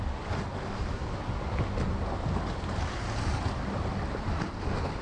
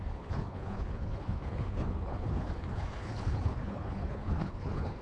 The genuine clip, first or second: first